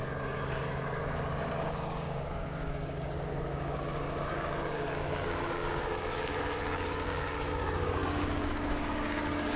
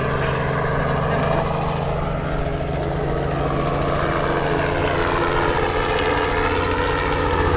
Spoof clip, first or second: first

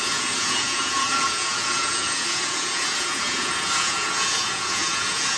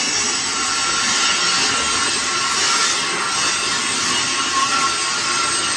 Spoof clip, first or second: first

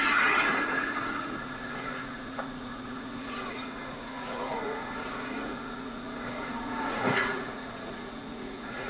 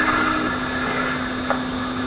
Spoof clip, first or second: first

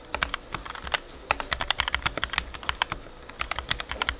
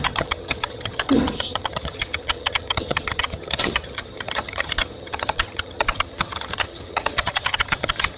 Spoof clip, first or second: second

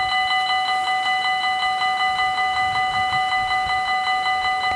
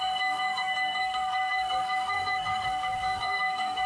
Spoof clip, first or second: second